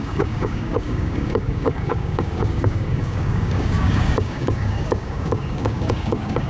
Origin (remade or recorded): remade